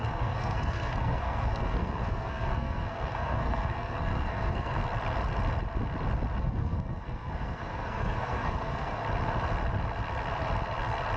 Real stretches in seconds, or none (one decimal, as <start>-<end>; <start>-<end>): 4.8-6.4; 9.0-11.2